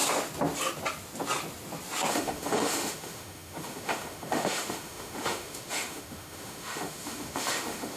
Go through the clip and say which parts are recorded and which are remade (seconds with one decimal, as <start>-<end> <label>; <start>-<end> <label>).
0.0-2.1 recorded; 2.1-8.0 remade